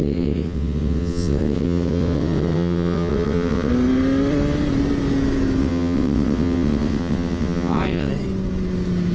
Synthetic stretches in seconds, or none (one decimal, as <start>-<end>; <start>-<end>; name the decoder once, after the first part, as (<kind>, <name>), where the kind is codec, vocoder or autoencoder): 0.0-3.7 (vocoder, WaveNeXt); 5.6-8.1